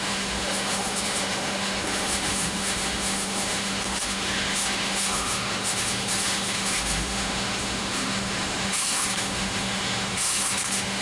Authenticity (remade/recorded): remade